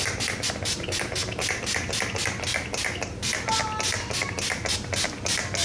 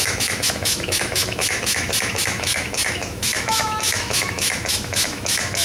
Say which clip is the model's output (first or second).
second